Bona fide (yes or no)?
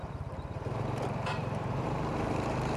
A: no